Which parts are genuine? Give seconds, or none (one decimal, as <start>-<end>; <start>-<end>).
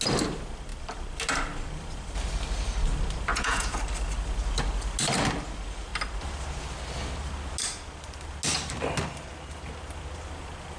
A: 0.0-3.3; 3.8-10.8